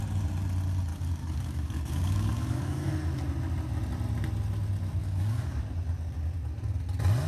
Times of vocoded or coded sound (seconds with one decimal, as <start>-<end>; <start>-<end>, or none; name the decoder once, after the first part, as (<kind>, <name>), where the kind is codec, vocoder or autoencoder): 0.9-2.9 (codec, DAC); 5.0-5.6